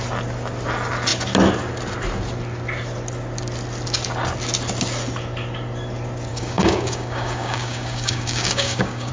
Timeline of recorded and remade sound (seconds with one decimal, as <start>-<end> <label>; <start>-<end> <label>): 0.0-6.3 recorded; 6.3-9.1 remade